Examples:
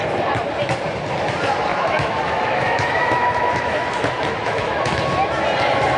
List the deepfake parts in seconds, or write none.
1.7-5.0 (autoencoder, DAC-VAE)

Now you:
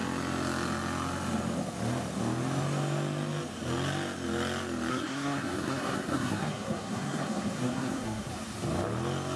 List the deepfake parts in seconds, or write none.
4.9-8.3 (codec, SNAC)

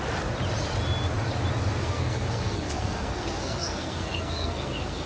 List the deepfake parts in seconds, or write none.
1.8-5.1 (codec, SNAC)

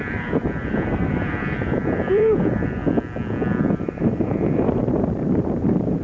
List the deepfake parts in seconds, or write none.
0.0-2.8 (vocoder, BigVGAN v2); 3.7-6.0

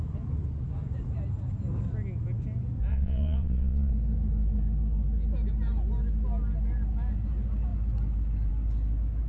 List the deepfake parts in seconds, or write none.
2.9-3.9 (vocoder, Vocos)

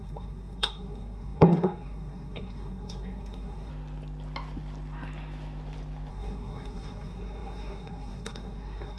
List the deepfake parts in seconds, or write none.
0.0-3.7 (codec, SNAC); 6.1-9.0

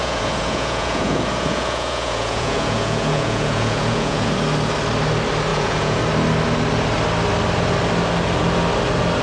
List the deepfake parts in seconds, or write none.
0.0-4.3 (vocoder, Vocos); 5.5-6.0